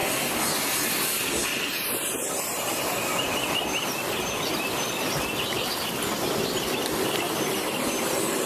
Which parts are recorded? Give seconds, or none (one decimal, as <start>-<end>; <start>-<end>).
0.0-8.5